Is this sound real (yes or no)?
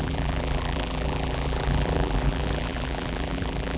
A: no